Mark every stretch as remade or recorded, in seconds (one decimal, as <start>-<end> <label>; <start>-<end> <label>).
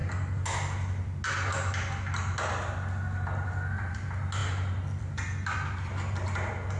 0.0-6.8 recorded